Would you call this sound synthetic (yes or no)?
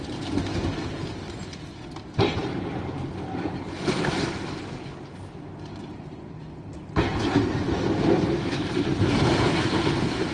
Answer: no